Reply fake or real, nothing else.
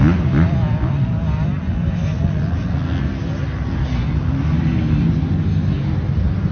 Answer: real